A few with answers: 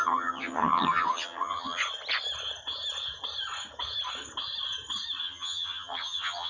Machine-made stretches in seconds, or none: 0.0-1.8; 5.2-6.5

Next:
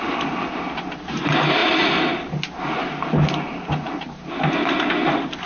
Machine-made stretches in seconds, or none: none

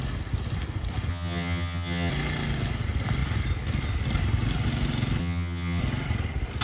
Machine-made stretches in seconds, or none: 1.1-2.1; 5.2-5.8

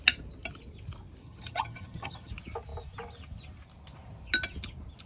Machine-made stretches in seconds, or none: 1.2-2.3

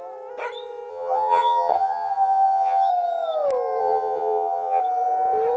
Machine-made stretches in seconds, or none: 0.9-2.9; 3.8-4.8